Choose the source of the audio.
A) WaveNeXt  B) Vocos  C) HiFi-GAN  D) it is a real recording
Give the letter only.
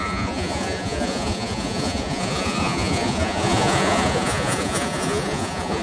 B